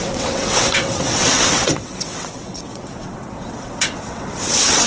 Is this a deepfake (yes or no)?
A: yes